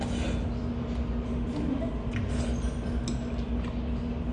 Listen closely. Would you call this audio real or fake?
real